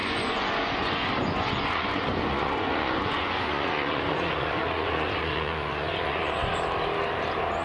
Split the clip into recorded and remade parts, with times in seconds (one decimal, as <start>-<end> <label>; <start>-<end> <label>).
0.0-6.4 remade; 6.4-7.6 recorded